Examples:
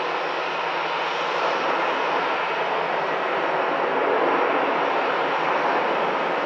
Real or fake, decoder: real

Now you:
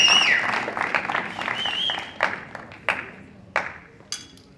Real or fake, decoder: real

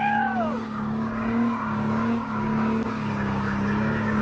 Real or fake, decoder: fake, codec, DAC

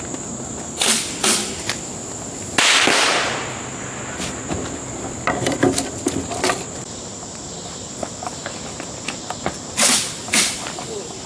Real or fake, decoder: real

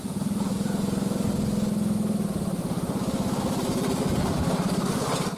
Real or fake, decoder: real